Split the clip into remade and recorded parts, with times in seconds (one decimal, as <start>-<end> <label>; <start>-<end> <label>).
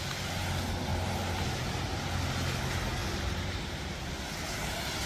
0.0-0.9 recorded; 0.9-2.0 remade; 2.0-3.0 recorded; 3.0-4.1 remade; 4.1-5.1 recorded